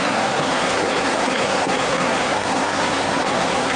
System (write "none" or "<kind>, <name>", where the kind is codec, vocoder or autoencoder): codec, SNAC